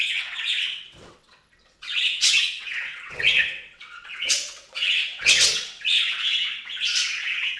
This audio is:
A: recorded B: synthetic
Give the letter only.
B